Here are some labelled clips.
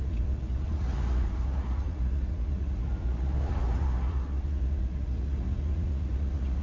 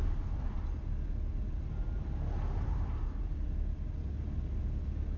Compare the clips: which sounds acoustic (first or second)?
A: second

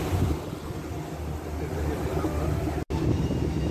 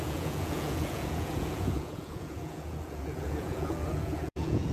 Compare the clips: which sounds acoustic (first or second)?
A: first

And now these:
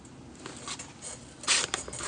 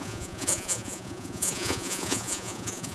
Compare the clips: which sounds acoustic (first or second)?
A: first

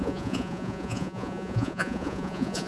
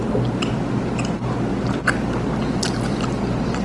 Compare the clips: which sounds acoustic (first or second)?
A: second